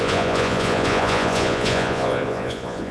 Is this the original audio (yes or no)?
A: no